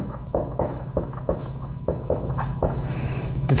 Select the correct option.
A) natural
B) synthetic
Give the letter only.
B